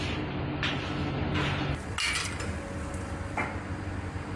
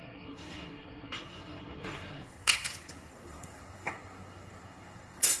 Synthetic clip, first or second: second